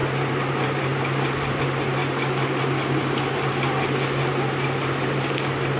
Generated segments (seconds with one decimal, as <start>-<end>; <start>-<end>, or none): 0.0-1.6